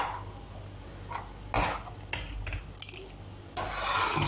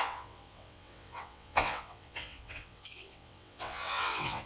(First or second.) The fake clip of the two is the second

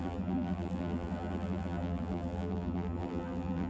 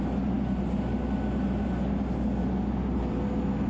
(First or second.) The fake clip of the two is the first